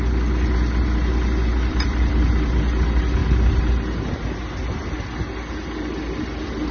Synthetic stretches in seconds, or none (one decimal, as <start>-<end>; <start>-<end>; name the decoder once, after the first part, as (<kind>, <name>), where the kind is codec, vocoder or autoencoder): 1.5-2.1 (vocoder, BigVGAN v2)